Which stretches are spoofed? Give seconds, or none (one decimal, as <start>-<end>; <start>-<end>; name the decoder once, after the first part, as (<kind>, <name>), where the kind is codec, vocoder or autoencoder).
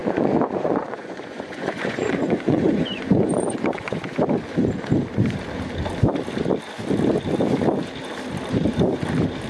0.0-4.0 (vocoder, Vocos)